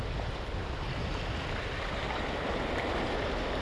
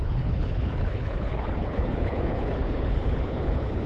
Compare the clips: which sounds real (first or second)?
first